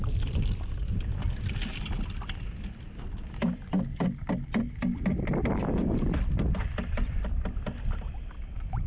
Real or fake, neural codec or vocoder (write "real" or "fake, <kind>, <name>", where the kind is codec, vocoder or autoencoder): fake, vocoder, BigVGAN v2